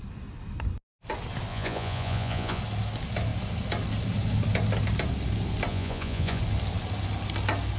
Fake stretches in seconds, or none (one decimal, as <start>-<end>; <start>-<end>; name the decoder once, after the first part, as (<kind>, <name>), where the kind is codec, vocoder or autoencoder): 1.5-2.6 (vocoder, Vocos); 5.7-6.4